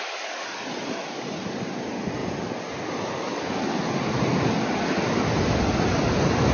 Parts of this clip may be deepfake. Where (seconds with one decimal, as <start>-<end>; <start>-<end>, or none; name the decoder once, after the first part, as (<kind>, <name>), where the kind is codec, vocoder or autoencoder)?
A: none